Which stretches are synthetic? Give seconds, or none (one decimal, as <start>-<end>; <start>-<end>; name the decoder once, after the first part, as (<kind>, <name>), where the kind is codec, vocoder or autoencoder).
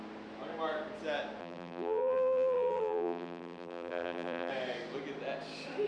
1.4-4.5 (vocoder, BigVGAN v2)